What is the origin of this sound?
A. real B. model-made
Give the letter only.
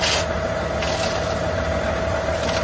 A